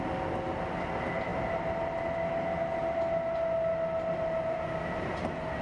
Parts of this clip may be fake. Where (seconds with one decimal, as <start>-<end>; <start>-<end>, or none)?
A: none